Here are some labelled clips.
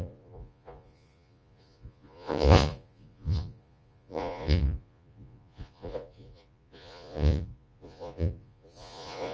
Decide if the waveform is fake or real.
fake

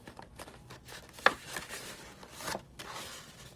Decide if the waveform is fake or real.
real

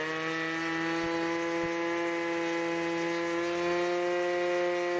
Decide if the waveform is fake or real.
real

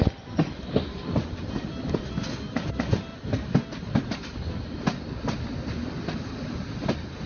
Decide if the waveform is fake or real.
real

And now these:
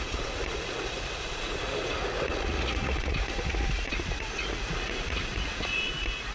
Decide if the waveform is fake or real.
fake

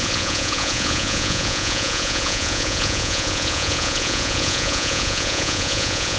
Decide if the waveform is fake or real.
fake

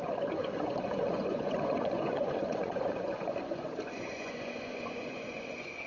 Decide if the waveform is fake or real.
fake